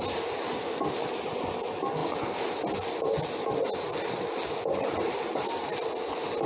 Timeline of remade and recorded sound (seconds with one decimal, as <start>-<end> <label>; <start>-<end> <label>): 0.0-6.5 recorded

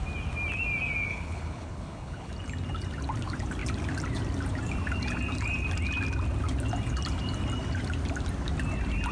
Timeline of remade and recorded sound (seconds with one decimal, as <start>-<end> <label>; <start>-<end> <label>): 0.0-1.1 recorded; 1.1-2.3 remade; 2.3-9.1 recorded

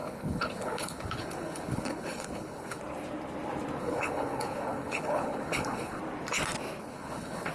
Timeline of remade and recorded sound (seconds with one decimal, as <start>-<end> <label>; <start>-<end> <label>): 0.0-2.8 remade; 2.8-3.8 recorded; 3.8-6.0 remade; 6.0-6.8 recorded; 6.8-7.5 remade